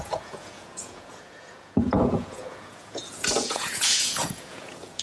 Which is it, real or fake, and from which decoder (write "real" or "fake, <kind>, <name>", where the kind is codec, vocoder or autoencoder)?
fake, vocoder, Vocos